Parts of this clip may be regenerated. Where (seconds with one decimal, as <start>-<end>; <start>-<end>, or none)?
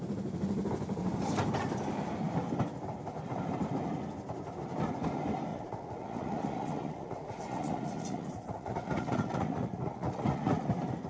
5.5-10.7